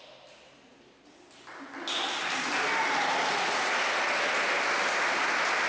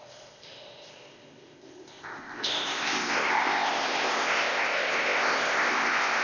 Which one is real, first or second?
first